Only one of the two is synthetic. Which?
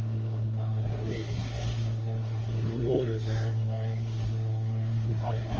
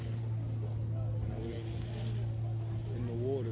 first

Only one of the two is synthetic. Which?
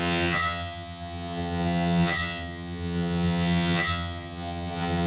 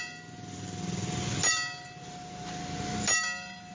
first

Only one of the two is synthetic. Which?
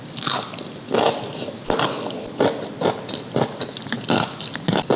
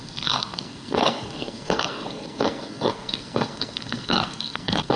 second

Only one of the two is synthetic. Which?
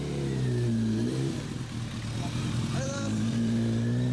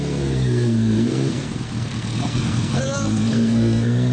second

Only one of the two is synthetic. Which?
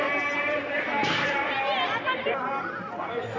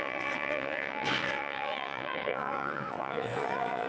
second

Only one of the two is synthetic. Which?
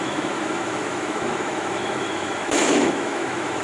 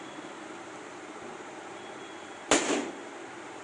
first